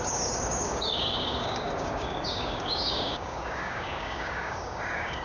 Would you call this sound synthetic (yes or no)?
yes